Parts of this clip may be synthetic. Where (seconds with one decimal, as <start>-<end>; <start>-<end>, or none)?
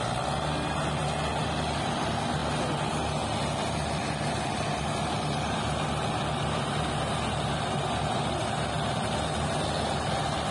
none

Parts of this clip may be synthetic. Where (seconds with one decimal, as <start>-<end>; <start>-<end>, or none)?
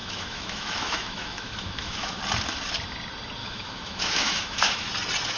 0.0-2.2; 3.4-4.9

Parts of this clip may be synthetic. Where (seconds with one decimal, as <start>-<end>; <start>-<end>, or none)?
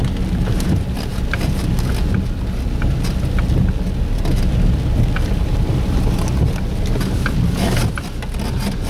none